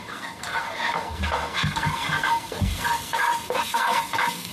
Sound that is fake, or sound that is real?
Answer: fake